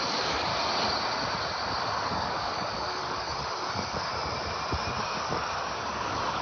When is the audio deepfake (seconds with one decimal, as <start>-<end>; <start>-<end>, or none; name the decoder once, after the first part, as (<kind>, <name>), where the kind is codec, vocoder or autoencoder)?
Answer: 0.0-0.5 (codec, DAC); 1.8-4.1; 5.0-6.4